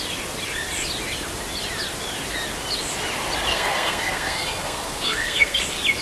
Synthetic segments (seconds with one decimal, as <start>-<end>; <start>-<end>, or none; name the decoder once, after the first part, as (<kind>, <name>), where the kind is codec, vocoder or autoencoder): 3.5-5.6 (codec, SNAC)